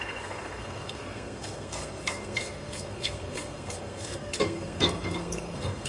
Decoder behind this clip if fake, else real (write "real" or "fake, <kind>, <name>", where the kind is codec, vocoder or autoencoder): fake, codec, SNAC